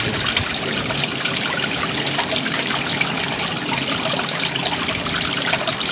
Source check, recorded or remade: recorded